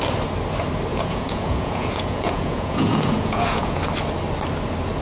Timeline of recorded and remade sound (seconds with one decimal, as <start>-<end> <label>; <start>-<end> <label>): 0.0-0.9 recorded; 0.9-3.8 remade; 3.8-5.0 recorded

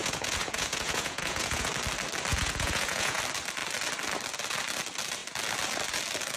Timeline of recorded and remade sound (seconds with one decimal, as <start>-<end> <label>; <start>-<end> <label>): 0.0-1.7 remade; 1.7-2.3 recorded; 2.3-3.2 remade; 3.2-6.4 recorded

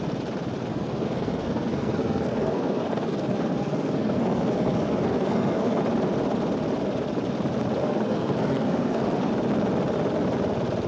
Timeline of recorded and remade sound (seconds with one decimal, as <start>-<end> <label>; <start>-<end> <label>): 0.0-0.7 recorded; 0.7-5.8 remade; 5.8-7.8 recorded; 7.8-9.3 remade; 9.3-10.9 recorded

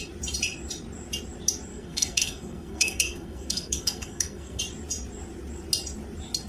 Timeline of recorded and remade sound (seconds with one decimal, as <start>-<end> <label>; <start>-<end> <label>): 0.0-1.7 recorded; 1.7-4.6 remade; 4.6-6.5 recorded

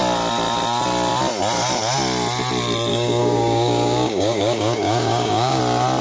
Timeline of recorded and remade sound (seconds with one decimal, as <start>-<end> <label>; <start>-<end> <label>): 0.0-2.9 recorded; 2.9-5.6 remade; 5.6-6.0 recorded

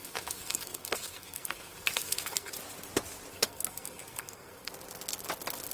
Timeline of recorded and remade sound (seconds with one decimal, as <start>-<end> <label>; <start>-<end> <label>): 0.0-2.5 remade; 2.5-3.3 recorded; 3.3-4.7 remade; 4.7-5.7 recorded

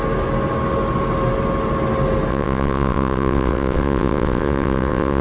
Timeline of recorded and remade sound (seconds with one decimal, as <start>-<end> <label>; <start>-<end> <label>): 0.0-2.3 recorded; 2.3-5.2 remade

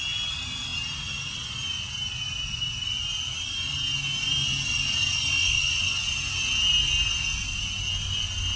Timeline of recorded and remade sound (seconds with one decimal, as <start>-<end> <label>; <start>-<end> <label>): 0.0-5.4 recorded; 5.4-6.0 remade; 6.0-8.6 recorded